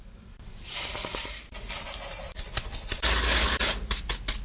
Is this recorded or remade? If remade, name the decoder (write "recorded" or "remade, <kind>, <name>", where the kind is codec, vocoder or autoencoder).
recorded